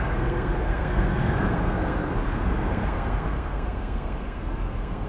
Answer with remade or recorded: remade